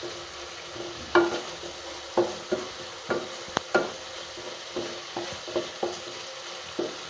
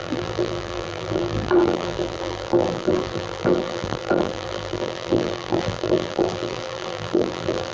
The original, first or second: first